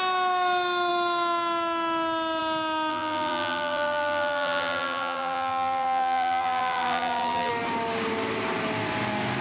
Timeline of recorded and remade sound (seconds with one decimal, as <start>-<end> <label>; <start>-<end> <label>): 0.0-2.9 recorded; 2.9-7.5 remade; 7.5-9.4 recorded